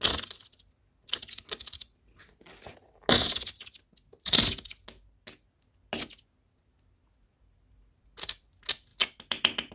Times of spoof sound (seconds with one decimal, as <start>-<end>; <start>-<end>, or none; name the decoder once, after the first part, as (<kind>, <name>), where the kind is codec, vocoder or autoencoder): none